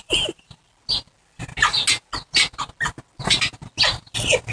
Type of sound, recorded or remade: recorded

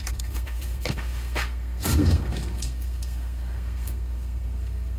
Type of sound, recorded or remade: remade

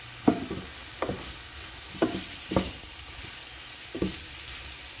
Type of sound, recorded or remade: recorded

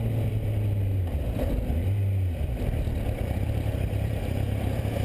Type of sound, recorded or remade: remade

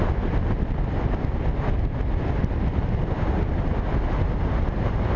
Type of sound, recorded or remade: recorded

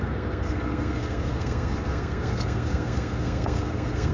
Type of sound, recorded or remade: remade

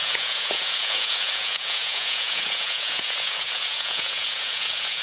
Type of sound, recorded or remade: remade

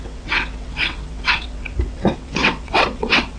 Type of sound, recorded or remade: remade